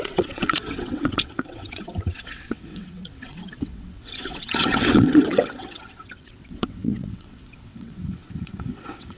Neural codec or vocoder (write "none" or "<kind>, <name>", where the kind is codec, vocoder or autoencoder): vocoder, WaveNeXt